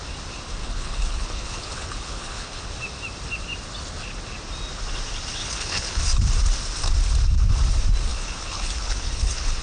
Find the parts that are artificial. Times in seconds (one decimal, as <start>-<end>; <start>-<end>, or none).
0.6-2.7; 5.4-6.0; 8.1-9.6